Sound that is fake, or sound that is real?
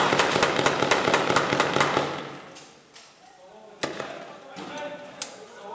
real